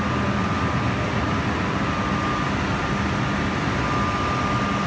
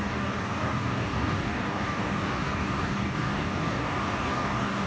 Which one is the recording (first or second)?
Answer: first